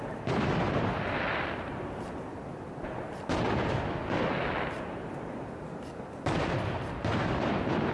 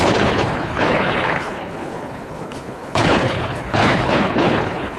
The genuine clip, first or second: first